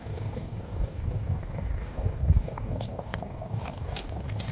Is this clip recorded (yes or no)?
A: no